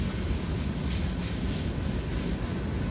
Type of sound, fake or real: real